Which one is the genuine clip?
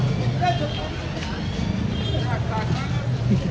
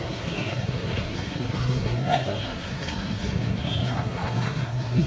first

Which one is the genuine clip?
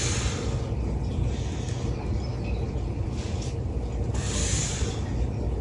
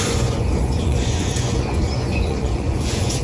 first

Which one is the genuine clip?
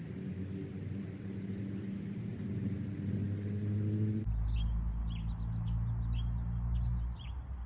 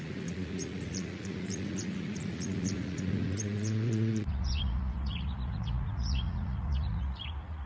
first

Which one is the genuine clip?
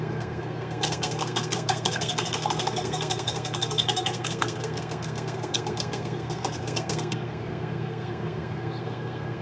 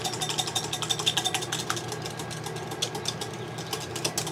second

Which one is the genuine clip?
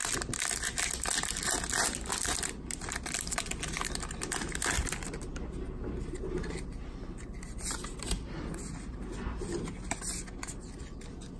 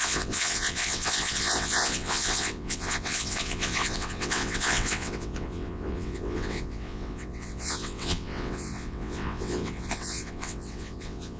first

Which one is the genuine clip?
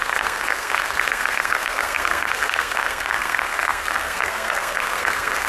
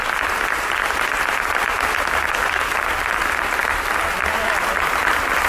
second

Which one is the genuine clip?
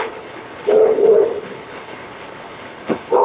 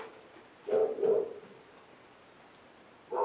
second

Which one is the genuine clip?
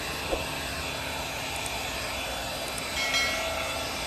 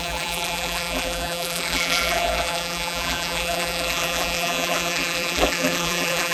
first